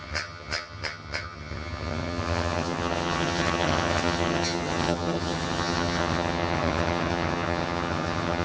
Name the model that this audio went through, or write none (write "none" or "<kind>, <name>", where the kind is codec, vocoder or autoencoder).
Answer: vocoder, HiFi-GAN